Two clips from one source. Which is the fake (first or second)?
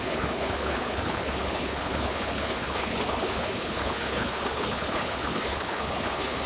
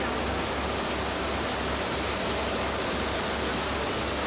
first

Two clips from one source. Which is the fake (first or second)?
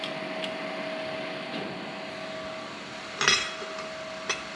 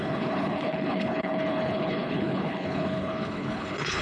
second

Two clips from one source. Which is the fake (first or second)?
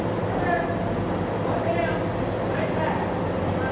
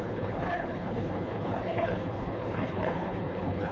second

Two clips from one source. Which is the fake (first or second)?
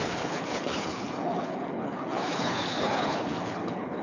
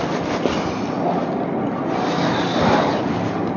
first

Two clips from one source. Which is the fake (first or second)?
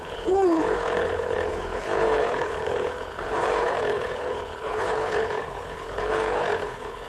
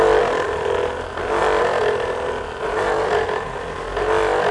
first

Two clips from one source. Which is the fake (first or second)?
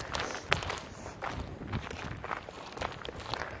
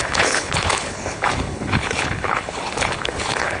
second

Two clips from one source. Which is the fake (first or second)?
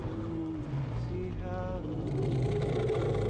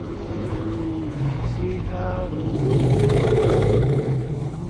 second